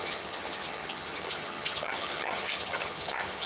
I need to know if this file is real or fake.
fake